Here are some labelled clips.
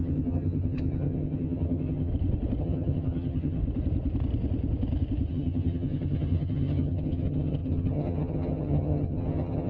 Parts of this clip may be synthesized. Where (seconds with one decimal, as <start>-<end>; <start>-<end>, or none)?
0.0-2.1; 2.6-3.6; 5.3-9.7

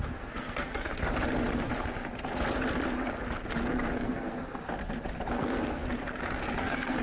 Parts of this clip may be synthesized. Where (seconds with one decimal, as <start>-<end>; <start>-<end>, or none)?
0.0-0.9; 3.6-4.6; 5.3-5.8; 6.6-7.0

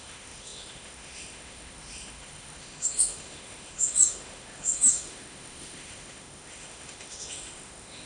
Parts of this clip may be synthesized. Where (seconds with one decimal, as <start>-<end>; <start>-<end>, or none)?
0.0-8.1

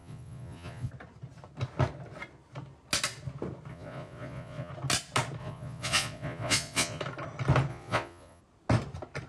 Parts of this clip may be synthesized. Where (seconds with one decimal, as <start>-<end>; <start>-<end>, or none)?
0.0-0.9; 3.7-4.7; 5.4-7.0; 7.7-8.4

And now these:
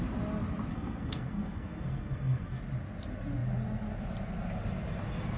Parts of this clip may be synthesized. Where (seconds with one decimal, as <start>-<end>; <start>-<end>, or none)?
0.7-2.6